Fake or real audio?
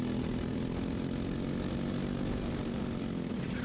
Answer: real